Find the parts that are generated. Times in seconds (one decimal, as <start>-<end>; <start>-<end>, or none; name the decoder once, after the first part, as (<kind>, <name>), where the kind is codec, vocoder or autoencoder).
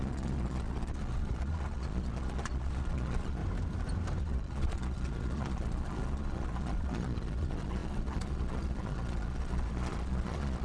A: 0.0-3.4 (vocoder, Vocos); 4.2-10.6